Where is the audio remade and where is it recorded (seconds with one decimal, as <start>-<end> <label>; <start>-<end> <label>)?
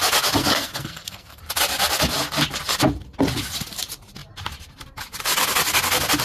0.0-0.4 recorded; 0.4-1.4 remade; 1.4-6.2 recorded